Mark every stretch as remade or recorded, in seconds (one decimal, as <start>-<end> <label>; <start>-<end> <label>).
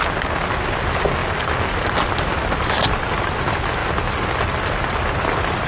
0.0-5.7 recorded